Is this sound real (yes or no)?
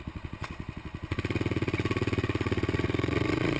no